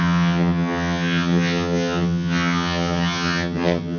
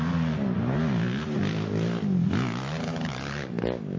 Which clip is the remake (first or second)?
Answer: first